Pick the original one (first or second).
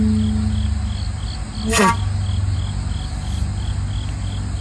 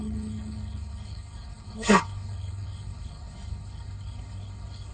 first